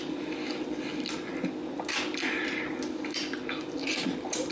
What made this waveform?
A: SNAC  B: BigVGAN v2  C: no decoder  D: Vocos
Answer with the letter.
C